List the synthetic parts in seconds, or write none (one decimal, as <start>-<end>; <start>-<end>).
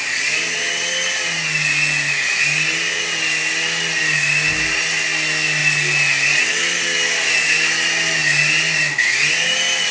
none